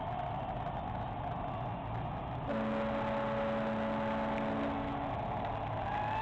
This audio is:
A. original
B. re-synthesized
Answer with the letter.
A